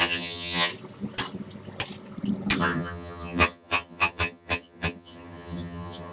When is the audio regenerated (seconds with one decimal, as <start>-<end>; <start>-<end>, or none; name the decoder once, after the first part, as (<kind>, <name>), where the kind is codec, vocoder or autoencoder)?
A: 0.0-0.7 (vocoder, HiFi-GAN); 2.6-6.1